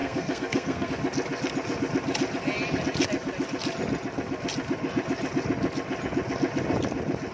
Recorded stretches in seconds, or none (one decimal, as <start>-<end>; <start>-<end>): 0.9-7.3